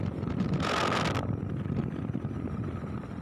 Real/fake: real